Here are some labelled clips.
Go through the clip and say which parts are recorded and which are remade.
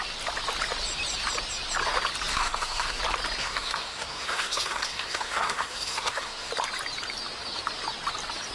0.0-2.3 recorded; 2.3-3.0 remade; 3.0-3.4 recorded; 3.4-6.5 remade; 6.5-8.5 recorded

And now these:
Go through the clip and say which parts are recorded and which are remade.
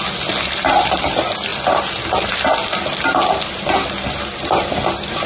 0.0-1.5 remade; 1.5-4.7 recorded; 4.7-5.3 remade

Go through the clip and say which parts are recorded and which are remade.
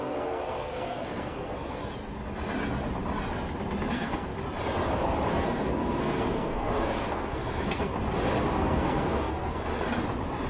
0.0-1.9 remade; 1.9-3.9 recorded; 3.9-4.3 remade; 4.3-5.3 recorded; 5.3-7.9 remade; 7.9-8.5 recorded; 8.5-9.7 remade; 9.7-10.5 recorded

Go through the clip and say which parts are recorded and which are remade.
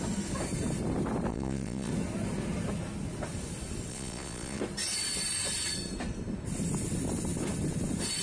0.0-1.3 recorded; 1.3-1.9 remade; 1.9-3.9 recorded; 3.9-4.6 remade; 4.6-8.2 recorded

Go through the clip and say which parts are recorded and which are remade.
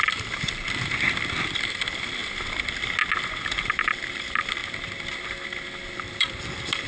0.0-2.2 remade; 2.2-3.6 recorded; 3.6-4.6 remade; 4.6-5.9 recorded; 5.9-6.9 remade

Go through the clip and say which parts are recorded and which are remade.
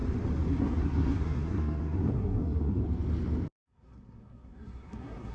0.0-0.6 recorded; 0.6-2.8 remade; 2.8-3.5 recorded; 3.5-5.3 remade